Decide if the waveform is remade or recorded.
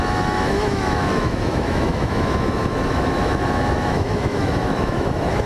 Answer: remade